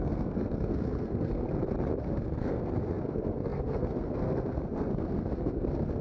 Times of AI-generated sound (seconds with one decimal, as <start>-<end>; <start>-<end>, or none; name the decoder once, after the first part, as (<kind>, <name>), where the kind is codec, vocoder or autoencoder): 0.0-1.5 (codec, SNAC); 2.0-6.0